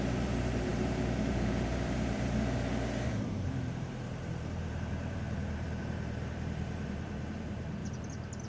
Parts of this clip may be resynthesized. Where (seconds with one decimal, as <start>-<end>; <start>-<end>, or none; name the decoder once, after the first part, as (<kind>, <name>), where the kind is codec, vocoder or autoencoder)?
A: 0.0-7.8 (vocoder, BigVGAN v2)

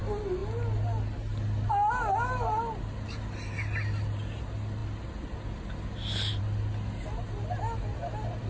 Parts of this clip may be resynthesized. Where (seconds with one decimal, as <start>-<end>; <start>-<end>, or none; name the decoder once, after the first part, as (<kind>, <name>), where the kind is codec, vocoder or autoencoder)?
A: none

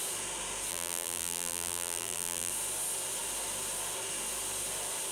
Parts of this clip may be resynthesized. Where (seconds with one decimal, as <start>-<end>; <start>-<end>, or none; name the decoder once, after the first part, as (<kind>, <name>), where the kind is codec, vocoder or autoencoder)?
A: 0.7-2.5 (vocoder, BigVGAN v2)

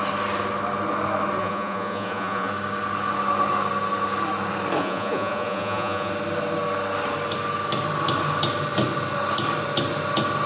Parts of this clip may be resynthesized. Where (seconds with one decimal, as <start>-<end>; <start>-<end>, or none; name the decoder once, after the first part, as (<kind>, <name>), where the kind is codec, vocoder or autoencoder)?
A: 1.4-2.5 (vocoder, Vocos); 4.8-6.1

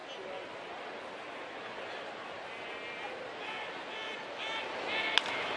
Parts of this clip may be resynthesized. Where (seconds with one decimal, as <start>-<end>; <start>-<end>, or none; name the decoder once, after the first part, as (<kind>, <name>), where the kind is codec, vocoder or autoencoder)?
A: none

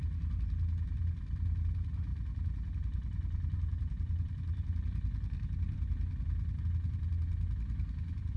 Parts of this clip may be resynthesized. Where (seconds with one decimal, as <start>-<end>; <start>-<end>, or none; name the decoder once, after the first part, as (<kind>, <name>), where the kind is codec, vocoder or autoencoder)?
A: 2.1-6.6 (vocoder, BigVGAN v2)

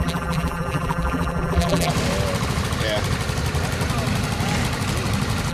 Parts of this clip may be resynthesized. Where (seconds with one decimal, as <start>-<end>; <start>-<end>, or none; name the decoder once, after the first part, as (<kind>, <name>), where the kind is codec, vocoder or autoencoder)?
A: 0.0-1.9 (vocoder, BigVGAN v2)

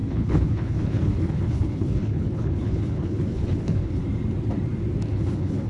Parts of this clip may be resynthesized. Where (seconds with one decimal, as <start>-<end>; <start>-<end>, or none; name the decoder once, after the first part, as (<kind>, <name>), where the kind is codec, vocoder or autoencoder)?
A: 0.0-4.0 (codec, HILCodec); 5.1-5.7